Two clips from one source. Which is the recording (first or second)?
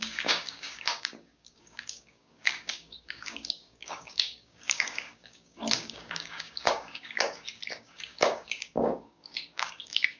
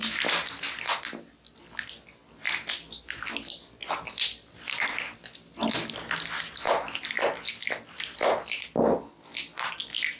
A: second